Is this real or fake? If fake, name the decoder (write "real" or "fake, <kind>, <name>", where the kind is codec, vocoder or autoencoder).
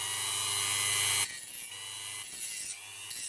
real